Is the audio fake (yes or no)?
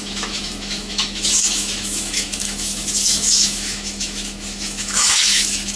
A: yes